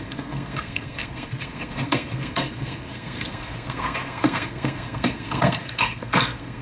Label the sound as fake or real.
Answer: fake